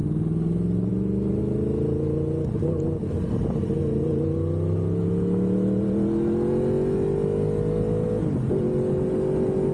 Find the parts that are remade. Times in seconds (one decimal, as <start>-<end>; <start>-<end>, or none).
none